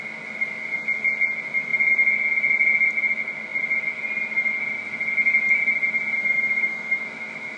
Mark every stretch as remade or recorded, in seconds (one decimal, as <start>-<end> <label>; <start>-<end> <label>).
0.0-6.3 recorded; 6.3-7.6 remade